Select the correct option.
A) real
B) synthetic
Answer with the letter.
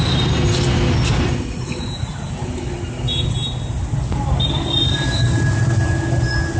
A